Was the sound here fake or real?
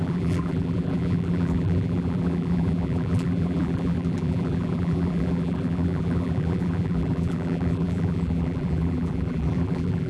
fake